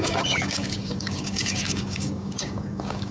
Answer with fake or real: fake